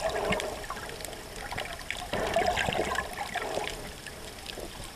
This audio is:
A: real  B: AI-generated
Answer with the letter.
A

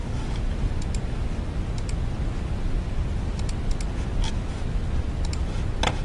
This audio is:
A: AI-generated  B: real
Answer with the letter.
B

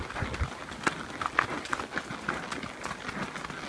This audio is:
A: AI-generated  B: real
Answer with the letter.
B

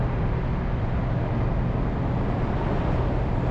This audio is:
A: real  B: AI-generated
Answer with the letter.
A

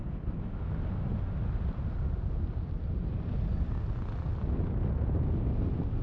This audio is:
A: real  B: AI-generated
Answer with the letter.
A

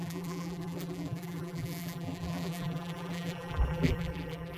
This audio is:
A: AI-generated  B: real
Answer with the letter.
A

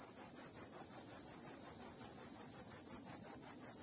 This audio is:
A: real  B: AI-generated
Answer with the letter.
B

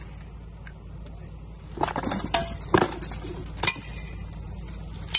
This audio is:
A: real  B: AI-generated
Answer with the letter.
A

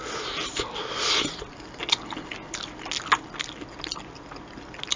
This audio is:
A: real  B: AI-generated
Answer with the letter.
A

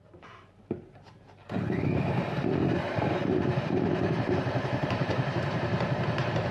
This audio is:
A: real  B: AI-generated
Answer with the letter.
B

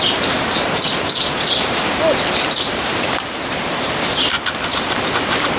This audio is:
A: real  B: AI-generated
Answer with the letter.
B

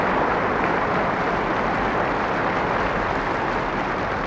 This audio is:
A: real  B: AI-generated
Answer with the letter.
B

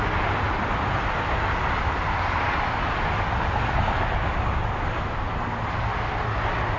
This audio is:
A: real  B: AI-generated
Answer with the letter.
A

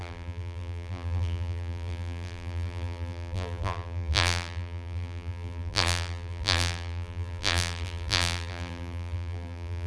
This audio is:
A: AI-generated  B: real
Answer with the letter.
A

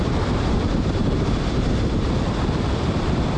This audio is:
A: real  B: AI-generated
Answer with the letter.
B